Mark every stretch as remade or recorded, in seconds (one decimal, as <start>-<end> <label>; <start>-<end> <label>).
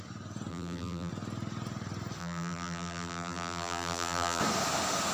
0.0-0.5 recorded; 0.5-1.1 remade; 1.1-2.2 recorded; 2.2-4.4 remade; 4.4-5.1 recorded